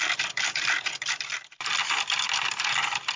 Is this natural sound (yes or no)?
yes